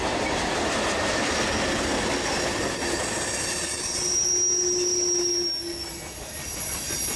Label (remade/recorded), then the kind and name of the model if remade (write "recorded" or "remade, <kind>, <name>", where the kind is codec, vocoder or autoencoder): recorded